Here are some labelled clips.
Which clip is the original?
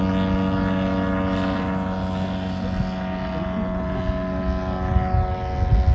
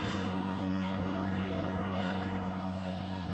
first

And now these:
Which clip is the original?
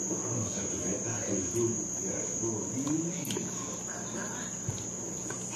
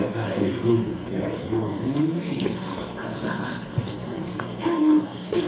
first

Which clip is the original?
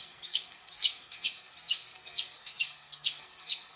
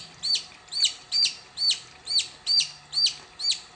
second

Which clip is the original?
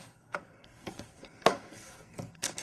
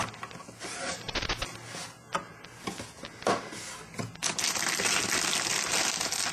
second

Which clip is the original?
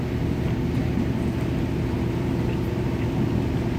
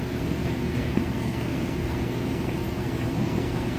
first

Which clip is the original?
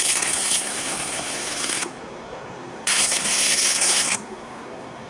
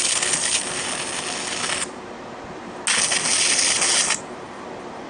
second